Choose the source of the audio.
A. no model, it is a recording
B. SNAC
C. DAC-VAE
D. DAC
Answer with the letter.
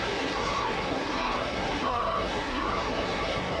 B